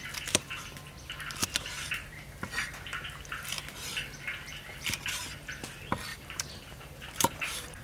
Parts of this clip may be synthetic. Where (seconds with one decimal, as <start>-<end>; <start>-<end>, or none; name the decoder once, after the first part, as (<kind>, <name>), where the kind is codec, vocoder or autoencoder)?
1.4-3.6 (vocoder, BigVGAN v2); 6.1-7.8